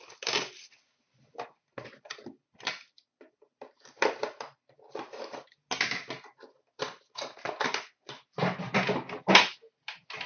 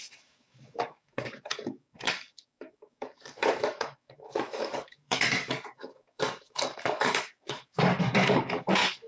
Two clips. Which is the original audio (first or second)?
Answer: first